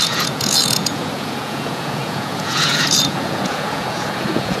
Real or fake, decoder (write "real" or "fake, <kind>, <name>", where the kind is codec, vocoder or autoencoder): fake, vocoder, Vocos